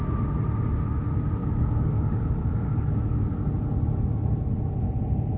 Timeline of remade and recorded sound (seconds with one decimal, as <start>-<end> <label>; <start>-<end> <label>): 0.0-1.4 recorded; 1.4-3.3 remade; 3.3-5.4 recorded